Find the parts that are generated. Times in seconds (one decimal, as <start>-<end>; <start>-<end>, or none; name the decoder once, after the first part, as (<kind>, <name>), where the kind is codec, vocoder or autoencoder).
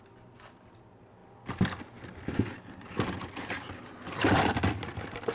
none